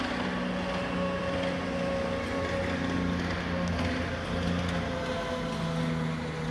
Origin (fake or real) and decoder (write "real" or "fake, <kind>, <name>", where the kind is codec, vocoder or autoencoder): real